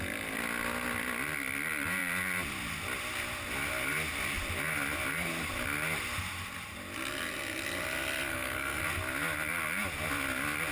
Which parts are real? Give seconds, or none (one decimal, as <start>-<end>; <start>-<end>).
0.0-8.3; 8.8-10.7